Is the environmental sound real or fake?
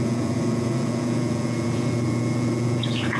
fake